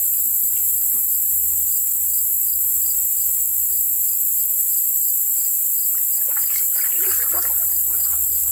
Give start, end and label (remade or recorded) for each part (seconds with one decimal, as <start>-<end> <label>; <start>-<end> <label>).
0.0-8.5 recorded